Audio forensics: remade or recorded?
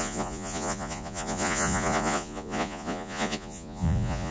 remade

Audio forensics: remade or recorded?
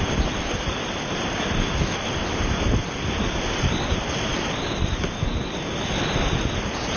remade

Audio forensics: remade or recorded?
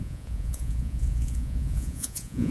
remade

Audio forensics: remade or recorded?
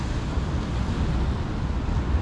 recorded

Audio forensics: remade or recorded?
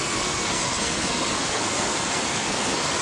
remade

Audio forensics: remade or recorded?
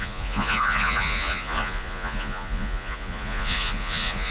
remade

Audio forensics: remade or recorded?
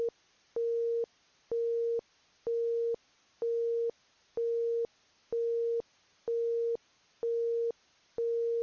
recorded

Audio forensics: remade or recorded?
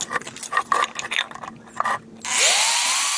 recorded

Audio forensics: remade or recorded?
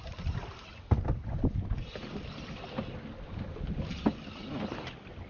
recorded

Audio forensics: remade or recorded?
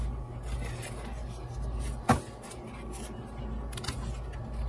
recorded